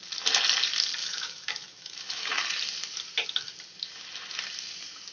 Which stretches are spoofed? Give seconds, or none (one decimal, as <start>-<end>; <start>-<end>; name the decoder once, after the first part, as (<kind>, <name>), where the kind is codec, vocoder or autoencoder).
1.0-2.4 (autoencoder, DAC-VAE)